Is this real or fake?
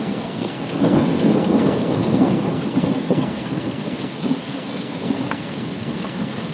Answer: fake